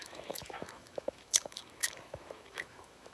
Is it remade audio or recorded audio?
remade